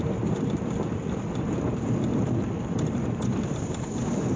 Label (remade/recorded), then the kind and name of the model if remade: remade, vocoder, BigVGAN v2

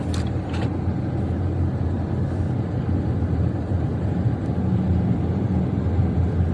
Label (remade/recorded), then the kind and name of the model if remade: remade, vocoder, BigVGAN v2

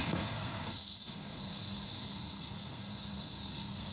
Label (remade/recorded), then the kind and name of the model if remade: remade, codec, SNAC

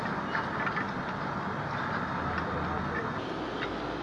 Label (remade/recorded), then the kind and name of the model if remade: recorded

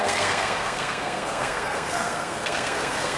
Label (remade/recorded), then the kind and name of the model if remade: remade, codec, SNAC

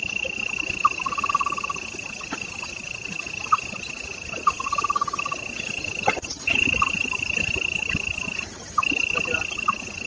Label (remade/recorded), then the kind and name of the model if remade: recorded